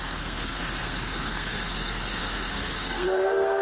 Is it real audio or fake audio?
fake